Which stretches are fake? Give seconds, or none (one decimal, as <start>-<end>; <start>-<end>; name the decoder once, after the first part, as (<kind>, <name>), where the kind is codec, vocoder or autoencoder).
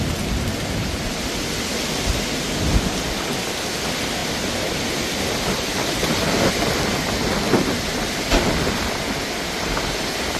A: none